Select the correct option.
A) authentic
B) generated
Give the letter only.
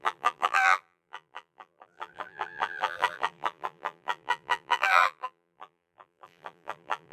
B